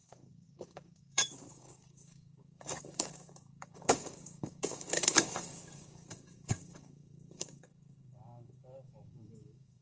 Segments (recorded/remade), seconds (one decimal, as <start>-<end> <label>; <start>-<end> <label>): 0.0-9.8 remade